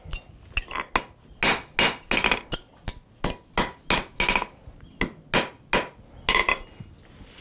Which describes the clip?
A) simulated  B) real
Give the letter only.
B